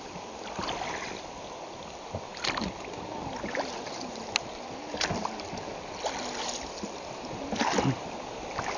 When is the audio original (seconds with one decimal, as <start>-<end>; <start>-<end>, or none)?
0.0-8.8